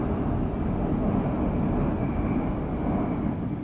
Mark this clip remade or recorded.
recorded